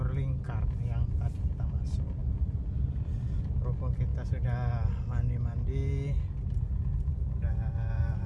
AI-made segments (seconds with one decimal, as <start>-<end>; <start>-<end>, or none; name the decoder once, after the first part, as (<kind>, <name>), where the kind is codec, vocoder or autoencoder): 2.2-2.7 (vocoder, BigVGAN v2); 4.1-4.7